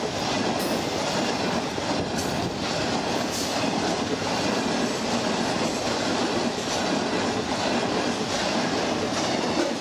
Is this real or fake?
real